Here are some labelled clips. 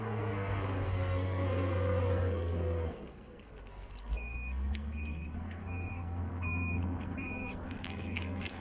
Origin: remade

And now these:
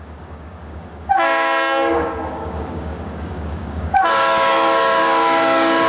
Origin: remade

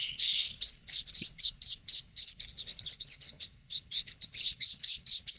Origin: remade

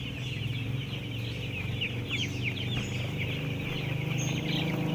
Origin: recorded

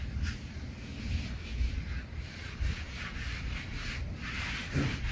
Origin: recorded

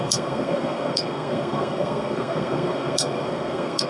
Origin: remade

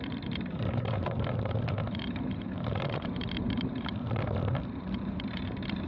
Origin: remade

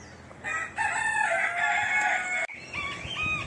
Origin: recorded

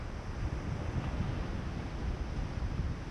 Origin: recorded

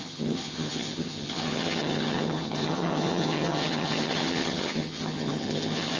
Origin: remade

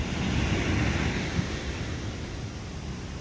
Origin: recorded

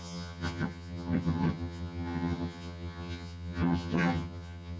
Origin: remade